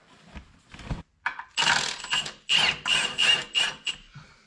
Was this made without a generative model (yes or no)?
yes